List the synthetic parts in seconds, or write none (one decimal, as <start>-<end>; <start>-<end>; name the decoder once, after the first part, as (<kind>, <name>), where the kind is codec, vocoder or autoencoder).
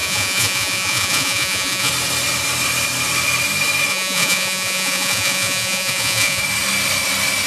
0.0-1.9 (vocoder, Vocos); 3.9-6.4